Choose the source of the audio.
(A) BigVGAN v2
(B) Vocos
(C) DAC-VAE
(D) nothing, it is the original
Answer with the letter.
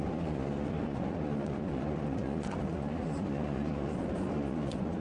B